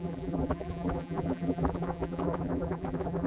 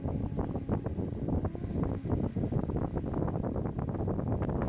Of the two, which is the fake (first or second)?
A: first